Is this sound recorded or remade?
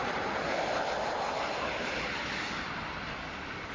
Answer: recorded